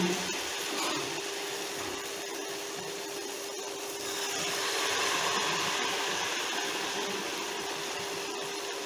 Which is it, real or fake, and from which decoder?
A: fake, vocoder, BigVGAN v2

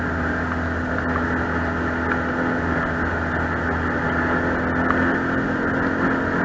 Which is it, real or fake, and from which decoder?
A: real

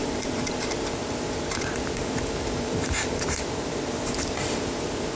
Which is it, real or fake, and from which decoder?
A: fake, vocoder, BigVGAN v2